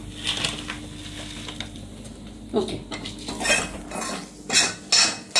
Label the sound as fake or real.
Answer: real